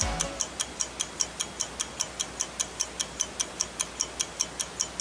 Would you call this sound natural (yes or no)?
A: yes